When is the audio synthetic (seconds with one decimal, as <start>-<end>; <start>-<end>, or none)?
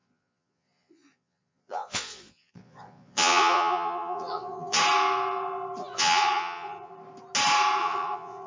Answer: 0.0-4.8; 5.8-6.9; 7.8-8.5